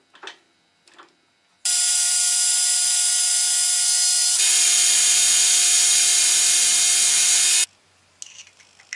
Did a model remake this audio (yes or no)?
no